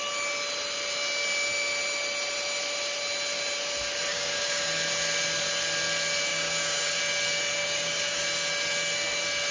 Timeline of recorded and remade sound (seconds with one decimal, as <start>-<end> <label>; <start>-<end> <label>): 0.0-4.1 recorded; 4.1-4.7 remade; 4.7-6.3 recorded; 6.3-7.0 remade; 7.0-7.6 recorded; 7.6-8.2 remade; 8.2-9.5 recorded